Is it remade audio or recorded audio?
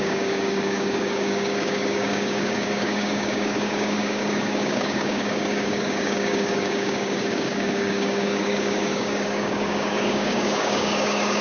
remade